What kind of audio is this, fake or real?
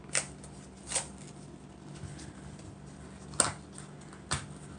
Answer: real